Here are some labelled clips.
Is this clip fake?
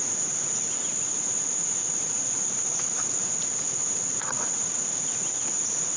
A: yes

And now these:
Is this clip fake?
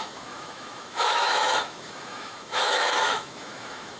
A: yes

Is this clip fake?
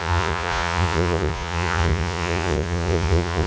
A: yes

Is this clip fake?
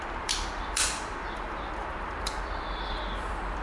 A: yes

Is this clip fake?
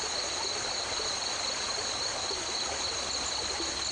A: no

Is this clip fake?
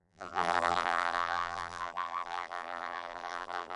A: yes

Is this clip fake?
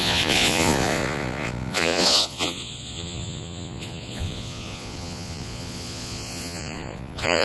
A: yes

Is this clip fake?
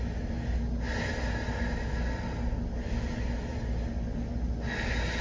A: no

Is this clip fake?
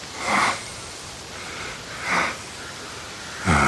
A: no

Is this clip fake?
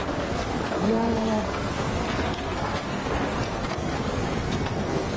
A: yes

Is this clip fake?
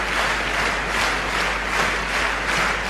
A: no